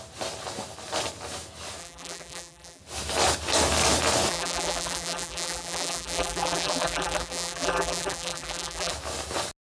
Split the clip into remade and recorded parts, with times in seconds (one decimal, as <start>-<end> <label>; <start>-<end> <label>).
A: 0.0-1.8 recorded; 1.8-2.8 remade; 2.8-4.3 recorded; 4.3-8.9 remade; 8.9-9.7 recorded